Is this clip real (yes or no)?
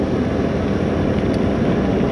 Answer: yes